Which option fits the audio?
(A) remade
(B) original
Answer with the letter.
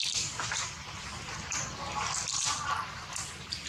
B